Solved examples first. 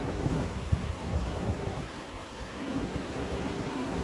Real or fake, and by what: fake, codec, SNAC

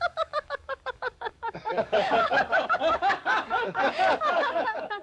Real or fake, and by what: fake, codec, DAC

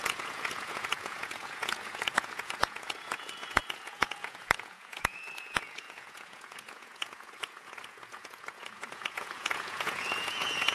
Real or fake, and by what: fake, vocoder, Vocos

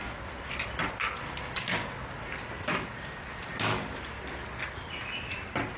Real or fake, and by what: real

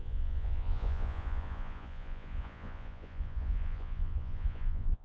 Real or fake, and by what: fake, vocoder, Vocos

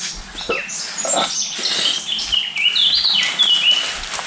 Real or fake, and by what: real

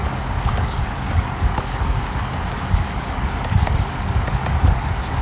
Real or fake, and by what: fake, codec, DAC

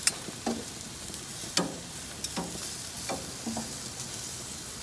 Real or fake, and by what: real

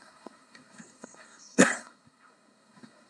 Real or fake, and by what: fake, codec, SNAC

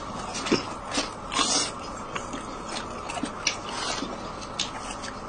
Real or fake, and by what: real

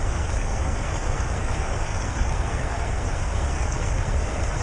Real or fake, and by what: fake, codec, SNAC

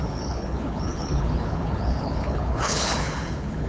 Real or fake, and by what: fake, codec, HILCodec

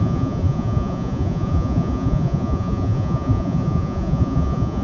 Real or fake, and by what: fake, vocoder, Vocos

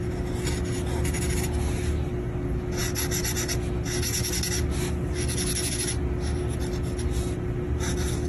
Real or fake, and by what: real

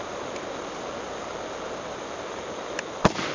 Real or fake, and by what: real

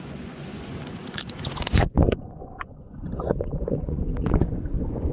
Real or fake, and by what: fake, vocoder, Vocos